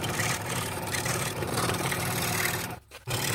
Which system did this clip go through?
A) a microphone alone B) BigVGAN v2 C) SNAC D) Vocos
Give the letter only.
B